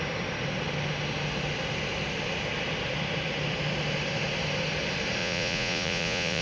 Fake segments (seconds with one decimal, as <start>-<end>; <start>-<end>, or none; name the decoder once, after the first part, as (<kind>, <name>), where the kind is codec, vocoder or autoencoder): 5.2-6.4 (vocoder, Vocos)